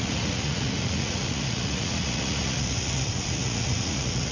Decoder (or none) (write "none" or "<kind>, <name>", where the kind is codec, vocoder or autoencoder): vocoder, Vocos